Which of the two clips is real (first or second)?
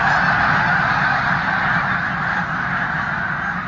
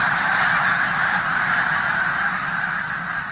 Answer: first